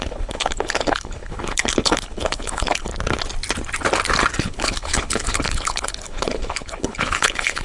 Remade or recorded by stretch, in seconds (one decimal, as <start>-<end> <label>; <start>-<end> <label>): 0.0-2.9 remade; 2.9-4.4 recorded; 4.4-7.6 remade